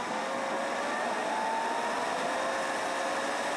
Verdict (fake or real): real